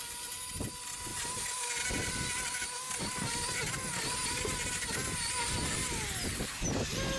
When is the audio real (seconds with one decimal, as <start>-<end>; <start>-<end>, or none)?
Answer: 0.0-7.2

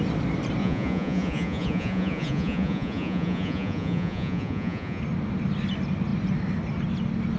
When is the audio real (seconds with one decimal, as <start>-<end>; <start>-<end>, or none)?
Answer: 0.0-0.6; 5.0-7.4

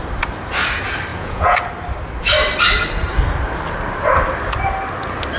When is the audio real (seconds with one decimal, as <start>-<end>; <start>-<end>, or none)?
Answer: 0.0-1.1; 1.6-5.4

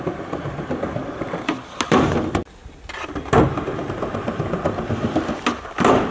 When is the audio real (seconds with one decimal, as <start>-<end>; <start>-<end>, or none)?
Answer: 0.0-6.1

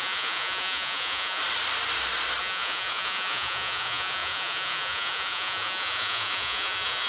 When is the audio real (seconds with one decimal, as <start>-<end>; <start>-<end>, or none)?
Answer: 1.4-2.4